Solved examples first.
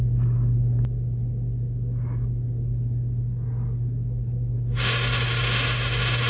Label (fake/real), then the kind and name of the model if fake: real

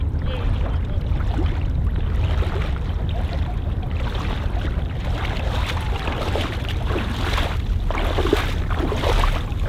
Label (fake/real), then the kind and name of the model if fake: real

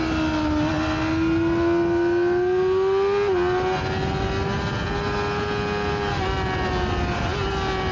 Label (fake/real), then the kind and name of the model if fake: real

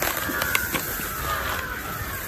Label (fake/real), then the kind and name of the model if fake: real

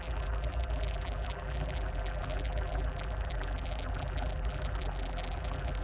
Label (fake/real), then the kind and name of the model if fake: fake, vocoder, BigVGAN v2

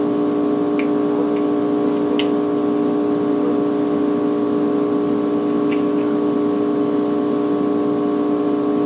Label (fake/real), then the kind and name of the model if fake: real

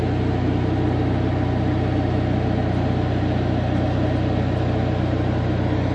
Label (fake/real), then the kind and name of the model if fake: real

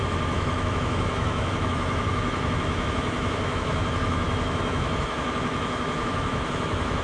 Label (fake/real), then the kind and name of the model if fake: fake, autoencoder, DAC-VAE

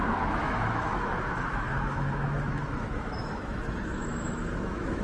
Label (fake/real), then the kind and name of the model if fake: fake, autoencoder, DAC-VAE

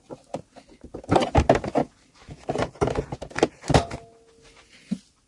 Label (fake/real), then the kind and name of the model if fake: real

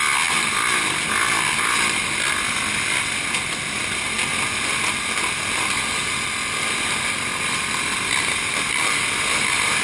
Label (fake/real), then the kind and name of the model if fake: real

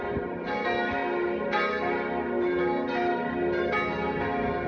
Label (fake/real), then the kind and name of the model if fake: real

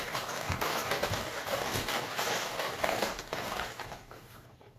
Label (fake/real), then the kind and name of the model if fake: fake, codec, DAC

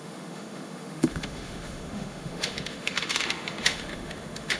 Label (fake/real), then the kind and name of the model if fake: fake, autoencoder, DAC-VAE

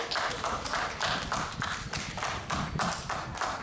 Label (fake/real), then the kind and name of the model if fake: real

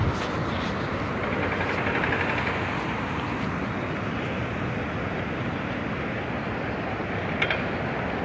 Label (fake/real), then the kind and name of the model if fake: real